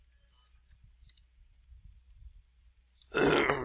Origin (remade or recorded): recorded